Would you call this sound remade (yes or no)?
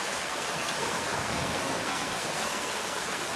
yes